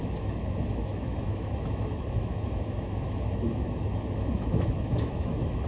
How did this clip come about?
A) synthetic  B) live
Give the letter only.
A